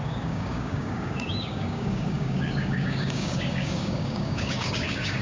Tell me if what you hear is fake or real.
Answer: fake